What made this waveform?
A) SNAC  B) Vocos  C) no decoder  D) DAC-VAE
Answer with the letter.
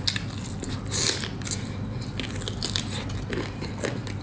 C